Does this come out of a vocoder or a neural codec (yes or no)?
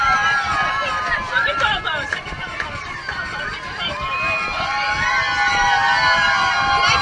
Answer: no